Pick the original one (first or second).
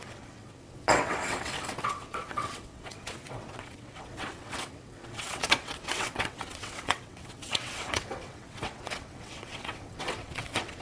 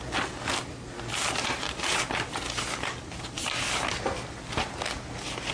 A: second